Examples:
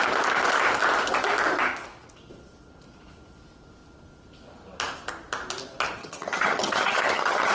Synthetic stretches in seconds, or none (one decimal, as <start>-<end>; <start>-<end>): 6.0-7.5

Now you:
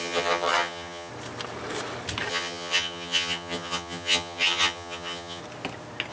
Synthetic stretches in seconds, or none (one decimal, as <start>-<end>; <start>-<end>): 0.0-1.1; 2.3-5.4

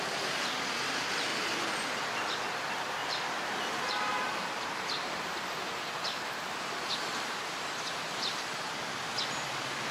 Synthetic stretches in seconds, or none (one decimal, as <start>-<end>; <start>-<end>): 3.0-6.9